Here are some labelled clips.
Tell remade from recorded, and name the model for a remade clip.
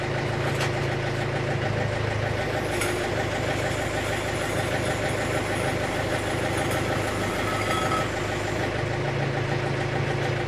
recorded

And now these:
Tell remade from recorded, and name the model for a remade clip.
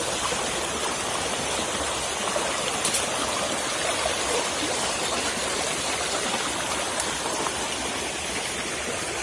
recorded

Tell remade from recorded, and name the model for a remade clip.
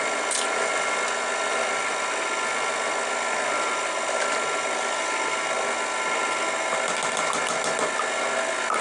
recorded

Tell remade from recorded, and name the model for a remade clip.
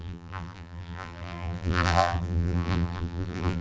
remade, vocoder, BigVGAN v2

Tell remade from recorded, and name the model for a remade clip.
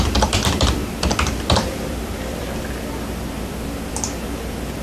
remade, vocoder, BigVGAN v2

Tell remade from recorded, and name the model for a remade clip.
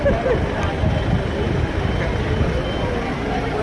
recorded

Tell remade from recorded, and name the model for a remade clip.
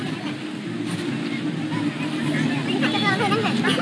recorded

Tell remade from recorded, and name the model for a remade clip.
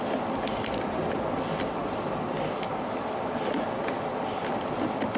recorded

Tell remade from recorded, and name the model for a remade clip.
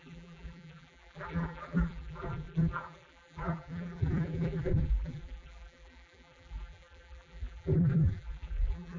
remade, vocoder, BigVGAN v2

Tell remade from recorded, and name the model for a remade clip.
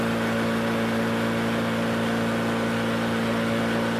recorded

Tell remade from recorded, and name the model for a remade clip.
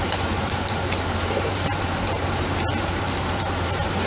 remade, vocoder, BigVGAN v2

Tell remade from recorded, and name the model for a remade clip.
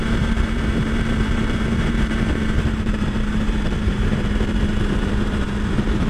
remade, vocoder, BigVGAN v2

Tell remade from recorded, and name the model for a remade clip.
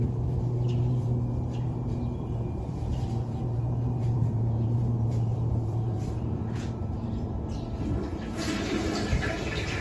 remade, vocoder, BigVGAN v2